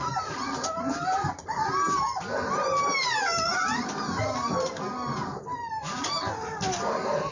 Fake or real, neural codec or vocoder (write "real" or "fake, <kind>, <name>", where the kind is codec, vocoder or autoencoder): real